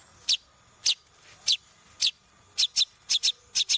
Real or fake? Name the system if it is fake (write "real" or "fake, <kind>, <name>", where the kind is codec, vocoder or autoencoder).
real